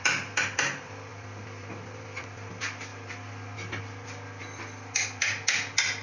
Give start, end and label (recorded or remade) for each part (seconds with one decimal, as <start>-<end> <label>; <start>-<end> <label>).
0.0-6.0 recorded